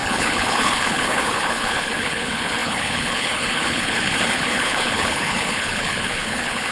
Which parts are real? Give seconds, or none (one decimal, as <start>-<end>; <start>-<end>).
none